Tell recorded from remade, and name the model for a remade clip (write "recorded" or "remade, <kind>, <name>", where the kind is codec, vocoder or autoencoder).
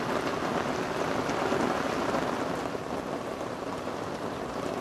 recorded